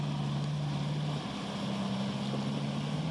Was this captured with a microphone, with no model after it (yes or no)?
yes